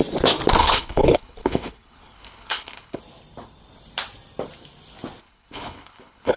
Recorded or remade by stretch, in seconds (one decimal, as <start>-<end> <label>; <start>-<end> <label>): 0.0-0.6 recorded; 0.6-3.0 remade; 3.0-5.2 recorded; 5.2-6.4 remade